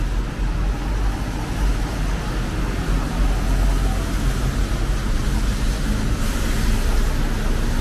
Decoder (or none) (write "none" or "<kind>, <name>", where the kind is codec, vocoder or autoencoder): none